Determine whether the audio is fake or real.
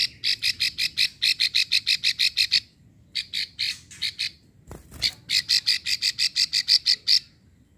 real